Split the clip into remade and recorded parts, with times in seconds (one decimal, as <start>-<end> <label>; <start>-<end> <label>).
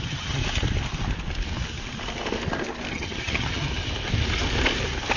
0.0-0.4 remade; 0.4-2.9 recorded; 2.9-3.7 remade; 3.7-5.2 recorded